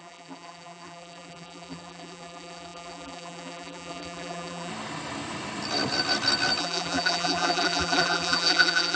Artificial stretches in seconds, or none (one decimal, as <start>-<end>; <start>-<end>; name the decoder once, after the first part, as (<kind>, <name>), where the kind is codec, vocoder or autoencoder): 0.0-4.7 (vocoder, BigVGAN v2); 6.6-8.9